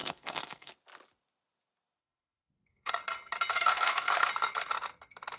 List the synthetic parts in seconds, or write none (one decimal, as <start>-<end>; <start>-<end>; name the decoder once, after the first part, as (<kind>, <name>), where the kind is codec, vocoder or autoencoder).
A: 0.0-0.7 (codec, SNAC); 2.0-2.9; 3.5-4.3